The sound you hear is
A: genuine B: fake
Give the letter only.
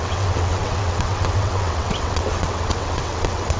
B